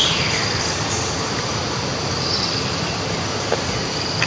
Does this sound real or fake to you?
real